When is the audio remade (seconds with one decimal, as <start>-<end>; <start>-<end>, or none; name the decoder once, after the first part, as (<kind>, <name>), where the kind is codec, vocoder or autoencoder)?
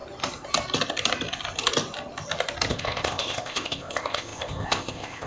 2.7-5.3 (codec, ZipCodec)